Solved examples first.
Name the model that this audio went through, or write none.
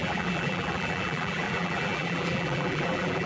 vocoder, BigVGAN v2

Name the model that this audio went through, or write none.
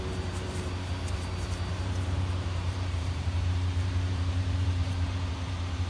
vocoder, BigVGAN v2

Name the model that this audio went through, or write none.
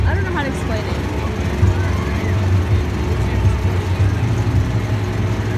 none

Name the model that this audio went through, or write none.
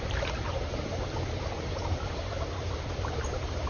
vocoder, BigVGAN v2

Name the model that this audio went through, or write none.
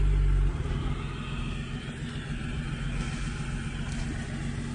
none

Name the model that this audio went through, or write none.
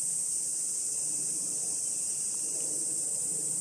vocoder, BigVGAN v2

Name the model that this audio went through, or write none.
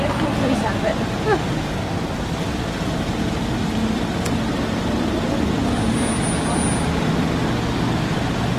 none